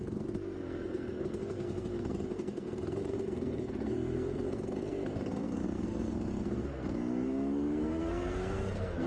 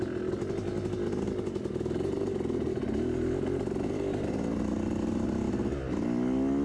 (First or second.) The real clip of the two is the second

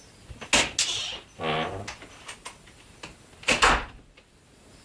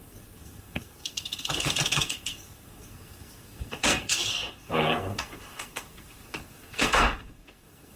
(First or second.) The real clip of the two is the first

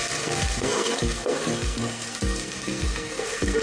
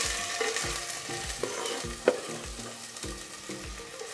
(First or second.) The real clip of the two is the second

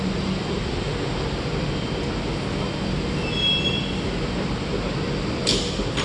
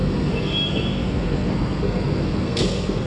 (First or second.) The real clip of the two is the first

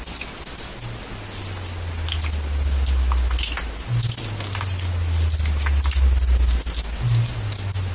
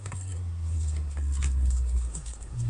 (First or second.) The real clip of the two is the first